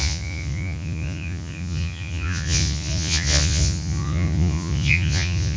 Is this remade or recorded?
remade